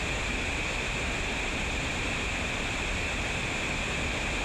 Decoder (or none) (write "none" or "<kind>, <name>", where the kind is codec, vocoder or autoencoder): none